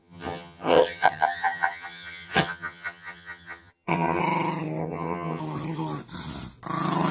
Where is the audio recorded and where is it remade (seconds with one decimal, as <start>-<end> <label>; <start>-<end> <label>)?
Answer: 0.0-4.2 remade; 4.2-4.8 recorded; 4.8-5.4 remade; 5.4-7.1 recorded

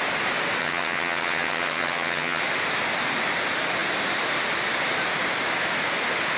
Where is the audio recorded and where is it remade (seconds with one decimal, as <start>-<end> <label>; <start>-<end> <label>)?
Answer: 0.0-0.6 recorded; 0.6-2.4 remade; 2.4-6.4 recorded